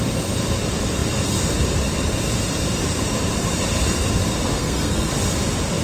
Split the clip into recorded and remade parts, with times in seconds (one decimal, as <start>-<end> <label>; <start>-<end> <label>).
0.0-4.6 recorded; 4.6-5.1 remade; 5.1-5.8 recorded